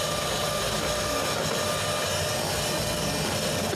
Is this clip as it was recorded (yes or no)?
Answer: yes